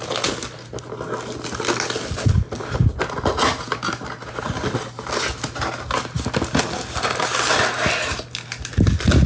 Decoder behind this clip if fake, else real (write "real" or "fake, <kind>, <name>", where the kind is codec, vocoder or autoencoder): real